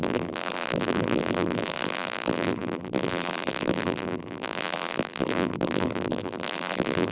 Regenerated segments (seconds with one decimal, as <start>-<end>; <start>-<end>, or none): 0.0-7.1